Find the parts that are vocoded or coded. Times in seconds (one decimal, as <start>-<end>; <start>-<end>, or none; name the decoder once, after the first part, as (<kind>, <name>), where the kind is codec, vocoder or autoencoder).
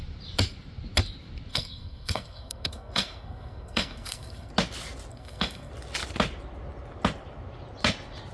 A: 1.5-4.5 (codec, SNAC); 5.1-5.7